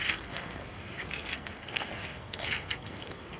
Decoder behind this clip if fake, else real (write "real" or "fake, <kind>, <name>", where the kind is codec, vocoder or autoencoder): fake, codec, SNAC